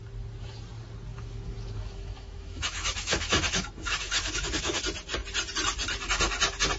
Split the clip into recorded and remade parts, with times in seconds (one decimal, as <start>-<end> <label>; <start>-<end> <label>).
0.0-1.1 recorded; 1.1-4.8 remade; 4.8-6.8 recorded